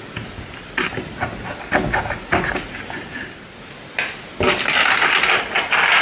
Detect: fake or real real